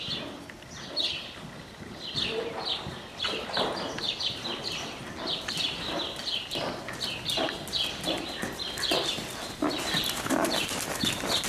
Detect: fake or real fake